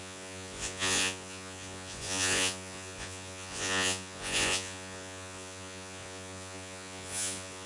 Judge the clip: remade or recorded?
remade